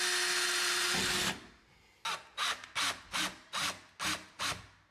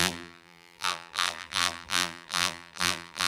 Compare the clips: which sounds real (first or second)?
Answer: first